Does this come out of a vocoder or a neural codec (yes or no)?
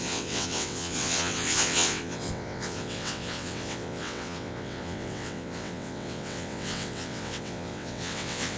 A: yes